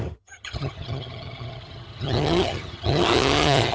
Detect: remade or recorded remade